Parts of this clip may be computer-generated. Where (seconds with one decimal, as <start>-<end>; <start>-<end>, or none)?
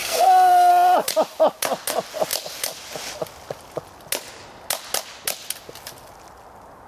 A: 0.0-0.7